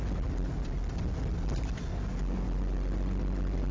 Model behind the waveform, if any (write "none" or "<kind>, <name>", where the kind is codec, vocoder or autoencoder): none